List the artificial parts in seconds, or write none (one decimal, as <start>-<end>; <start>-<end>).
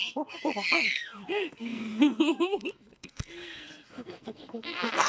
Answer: 0.0-5.1